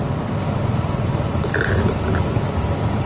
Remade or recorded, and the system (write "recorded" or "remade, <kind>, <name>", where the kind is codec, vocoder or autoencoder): remade, vocoder, BigVGAN v2